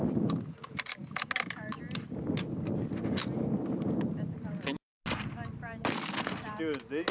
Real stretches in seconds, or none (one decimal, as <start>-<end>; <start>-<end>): 0.0-7.1

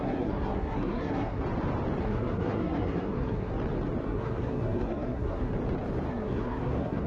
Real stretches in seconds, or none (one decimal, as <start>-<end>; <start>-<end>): 1.4-2.0; 3.5-4.0; 5.5-6.1

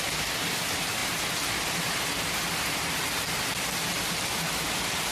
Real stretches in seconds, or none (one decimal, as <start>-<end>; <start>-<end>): 0.0-5.1

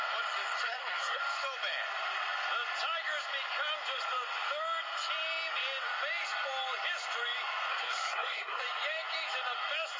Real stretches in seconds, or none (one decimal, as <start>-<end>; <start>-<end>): 0.0-0.6; 1.2-7.7; 8.6-10.0

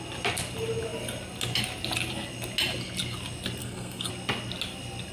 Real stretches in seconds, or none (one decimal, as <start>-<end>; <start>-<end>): 0.0-3.6; 4.1-5.1

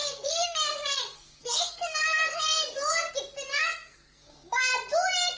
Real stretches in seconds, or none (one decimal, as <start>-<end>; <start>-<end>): 3.1-3.5; 4.7-5.4

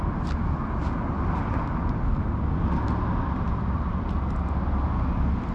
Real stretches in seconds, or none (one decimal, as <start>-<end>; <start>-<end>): 0.0-5.5